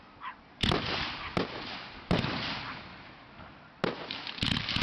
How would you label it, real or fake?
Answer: real